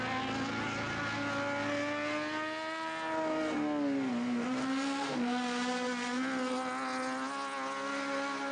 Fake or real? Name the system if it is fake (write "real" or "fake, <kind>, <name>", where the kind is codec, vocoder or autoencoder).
real